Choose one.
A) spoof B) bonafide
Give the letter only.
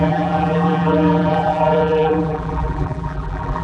A